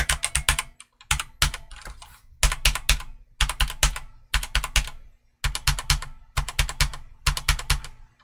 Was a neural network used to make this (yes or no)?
no